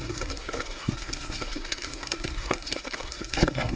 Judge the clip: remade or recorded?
remade